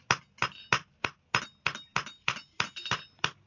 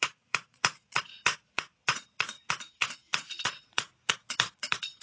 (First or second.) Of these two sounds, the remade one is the second